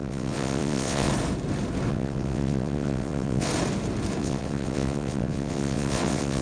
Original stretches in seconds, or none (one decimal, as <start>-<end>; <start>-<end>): 1.1-1.9; 3.5-4.2